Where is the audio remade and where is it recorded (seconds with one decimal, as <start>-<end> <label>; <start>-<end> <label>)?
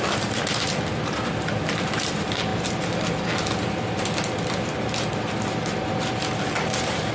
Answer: 0.0-7.1 recorded